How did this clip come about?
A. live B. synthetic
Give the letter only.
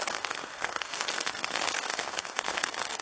B